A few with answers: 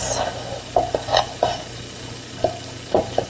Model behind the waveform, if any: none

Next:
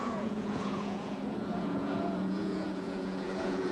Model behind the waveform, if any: vocoder, Vocos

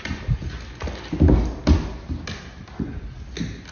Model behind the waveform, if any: none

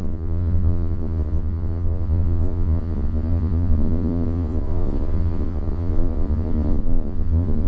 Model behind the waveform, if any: vocoder, Vocos